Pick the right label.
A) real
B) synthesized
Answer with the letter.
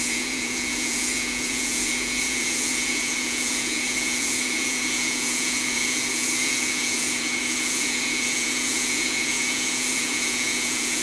B